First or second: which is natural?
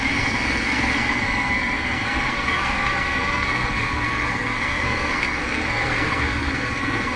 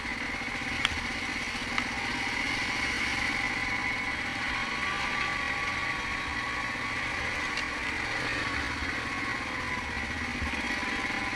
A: second